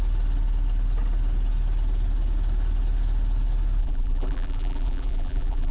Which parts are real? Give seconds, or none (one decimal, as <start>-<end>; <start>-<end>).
0.0-3.8